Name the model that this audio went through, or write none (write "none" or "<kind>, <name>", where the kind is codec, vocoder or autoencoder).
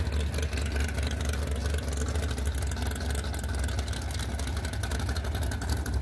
none